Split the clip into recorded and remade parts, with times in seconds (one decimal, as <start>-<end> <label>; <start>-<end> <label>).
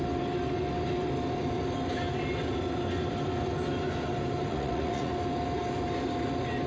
0.0-4.5 recorded; 4.5-5.1 remade; 5.1-6.7 recorded